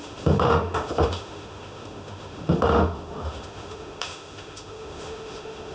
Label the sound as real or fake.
fake